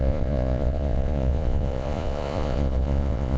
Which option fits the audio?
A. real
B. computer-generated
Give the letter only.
B